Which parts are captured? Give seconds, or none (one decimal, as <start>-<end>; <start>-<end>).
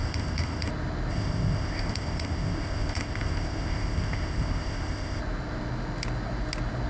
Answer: 0.7-1.1; 5.2-6.9